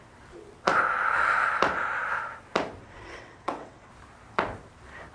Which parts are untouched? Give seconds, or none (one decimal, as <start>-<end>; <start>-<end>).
0.0-2.8; 3.9-5.1